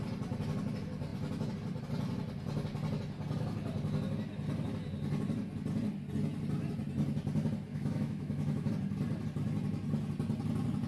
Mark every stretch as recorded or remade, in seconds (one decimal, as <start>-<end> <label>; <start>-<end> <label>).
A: 0.0-7.7 recorded; 7.7-8.7 remade; 8.7-10.9 recorded